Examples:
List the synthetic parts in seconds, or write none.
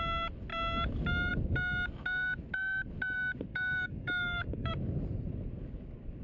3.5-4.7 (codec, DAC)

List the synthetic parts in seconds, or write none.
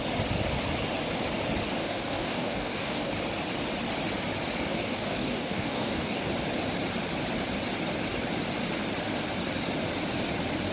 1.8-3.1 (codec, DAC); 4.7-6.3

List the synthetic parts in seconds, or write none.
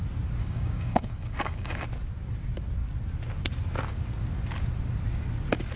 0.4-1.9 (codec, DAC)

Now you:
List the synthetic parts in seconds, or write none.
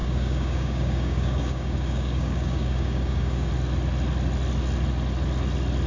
0.0-3.5 (codec, DAC)